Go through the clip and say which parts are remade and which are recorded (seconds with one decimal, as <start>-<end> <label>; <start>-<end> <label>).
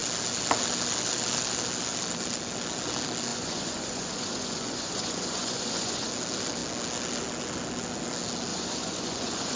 0.0-3.3 recorded; 3.3-6.1 remade; 6.1-8.5 recorded; 8.5-9.6 remade